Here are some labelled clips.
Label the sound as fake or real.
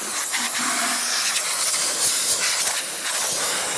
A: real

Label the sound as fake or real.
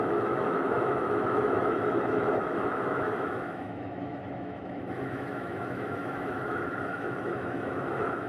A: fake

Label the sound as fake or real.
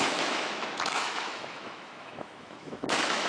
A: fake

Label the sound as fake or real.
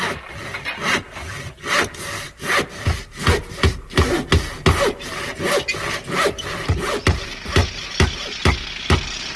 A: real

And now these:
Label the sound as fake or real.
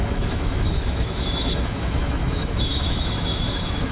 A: fake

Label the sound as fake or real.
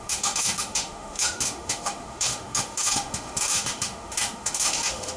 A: fake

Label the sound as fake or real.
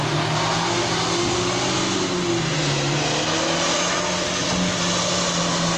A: real